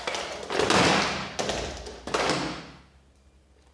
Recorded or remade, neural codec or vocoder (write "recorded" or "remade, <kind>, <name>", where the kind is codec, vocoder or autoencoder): recorded